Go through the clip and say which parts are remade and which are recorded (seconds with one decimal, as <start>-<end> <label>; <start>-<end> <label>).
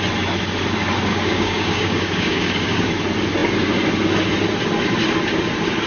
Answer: 0.0-1.1 recorded; 1.1-2.9 remade; 2.9-5.9 recorded